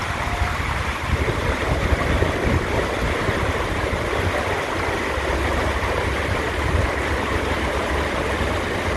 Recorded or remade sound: recorded